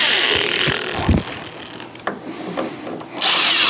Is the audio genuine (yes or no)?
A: yes